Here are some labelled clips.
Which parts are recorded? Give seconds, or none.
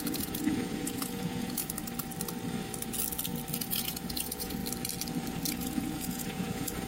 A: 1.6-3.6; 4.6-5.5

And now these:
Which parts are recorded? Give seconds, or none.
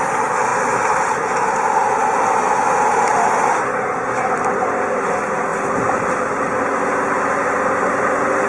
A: 0.0-8.5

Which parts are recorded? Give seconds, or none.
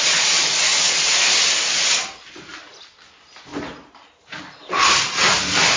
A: 0.0-5.8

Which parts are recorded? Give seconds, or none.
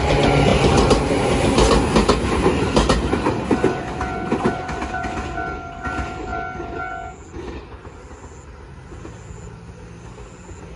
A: 0.0-10.8